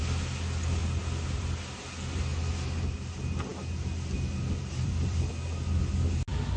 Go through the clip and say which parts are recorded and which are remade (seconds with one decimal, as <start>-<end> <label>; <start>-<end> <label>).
0.0-3.5 recorded; 3.5-5.3 remade; 5.3-6.6 recorded